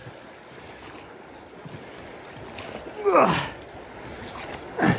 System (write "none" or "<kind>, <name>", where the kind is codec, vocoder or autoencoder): none